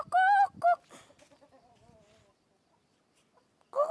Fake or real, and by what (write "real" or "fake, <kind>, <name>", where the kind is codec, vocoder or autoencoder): real